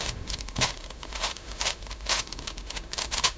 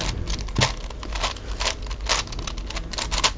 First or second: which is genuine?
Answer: second